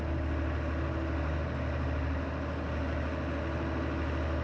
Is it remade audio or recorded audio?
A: recorded